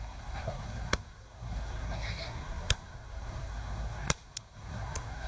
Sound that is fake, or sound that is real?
fake